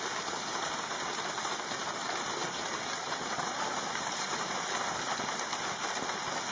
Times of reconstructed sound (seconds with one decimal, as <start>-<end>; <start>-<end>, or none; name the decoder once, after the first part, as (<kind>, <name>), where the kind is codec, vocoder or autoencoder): 2.4-5.0 (vocoder, BigVGAN v2)